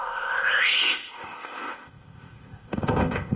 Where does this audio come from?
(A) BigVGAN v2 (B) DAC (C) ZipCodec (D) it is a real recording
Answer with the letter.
C